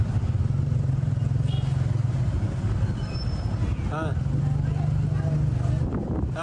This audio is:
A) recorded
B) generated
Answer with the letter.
A